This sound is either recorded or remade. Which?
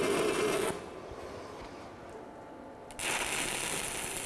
recorded